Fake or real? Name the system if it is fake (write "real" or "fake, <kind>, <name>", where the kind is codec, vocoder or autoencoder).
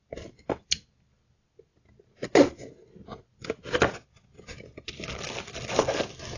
real